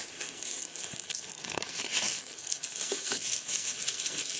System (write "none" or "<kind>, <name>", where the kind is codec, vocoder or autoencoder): codec, SNAC